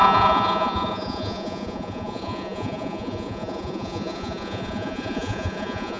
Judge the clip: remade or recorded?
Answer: remade